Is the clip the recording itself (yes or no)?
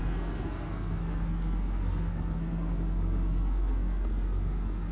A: no